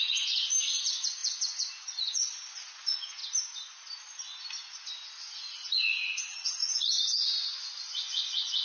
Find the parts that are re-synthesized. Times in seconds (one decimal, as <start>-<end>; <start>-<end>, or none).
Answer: 0.0-3.2; 5.5-8.6